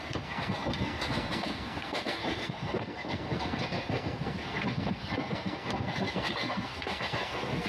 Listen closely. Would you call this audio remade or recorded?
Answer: remade